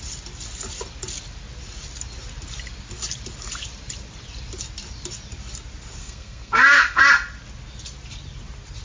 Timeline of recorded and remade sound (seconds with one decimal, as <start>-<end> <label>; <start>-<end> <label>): 0.0-6.0 recorded; 6.0-7.0 remade; 7.0-8.8 recorded